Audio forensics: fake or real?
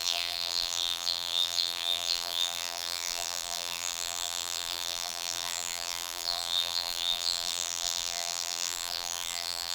fake